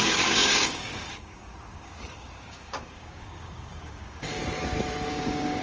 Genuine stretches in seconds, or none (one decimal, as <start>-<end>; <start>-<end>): 4.4-5.1